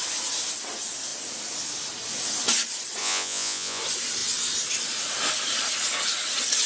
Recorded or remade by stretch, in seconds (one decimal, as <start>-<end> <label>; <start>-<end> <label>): 0.0-3.0 recorded; 3.0-3.8 remade; 3.8-6.7 recorded